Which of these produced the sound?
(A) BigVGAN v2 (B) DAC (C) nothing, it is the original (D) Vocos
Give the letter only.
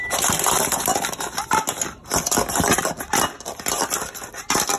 C